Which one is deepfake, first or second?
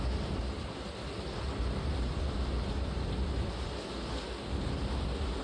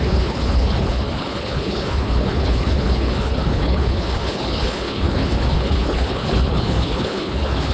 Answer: second